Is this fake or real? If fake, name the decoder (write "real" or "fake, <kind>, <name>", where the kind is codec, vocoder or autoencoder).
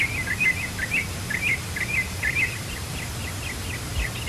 real